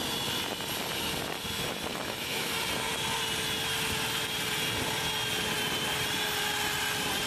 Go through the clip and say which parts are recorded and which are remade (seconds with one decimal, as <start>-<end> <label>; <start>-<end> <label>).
0.0-1.9 recorded; 1.9-2.5 remade; 2.5-7.3 recorded